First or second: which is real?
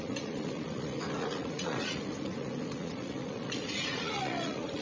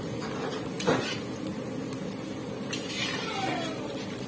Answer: second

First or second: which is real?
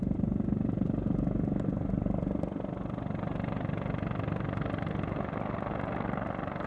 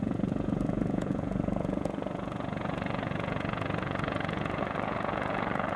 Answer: first